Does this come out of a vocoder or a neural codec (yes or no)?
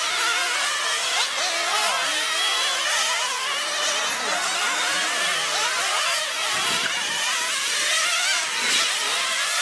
no